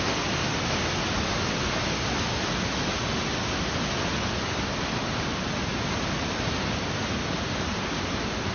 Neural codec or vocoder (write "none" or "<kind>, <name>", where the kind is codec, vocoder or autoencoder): none